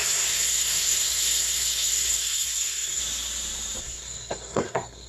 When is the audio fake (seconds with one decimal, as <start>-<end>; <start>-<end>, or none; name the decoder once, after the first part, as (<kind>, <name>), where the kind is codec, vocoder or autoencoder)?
0.0-3.0 (codec, SNAC); 3.8-5.1